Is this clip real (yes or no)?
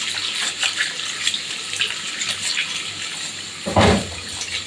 yes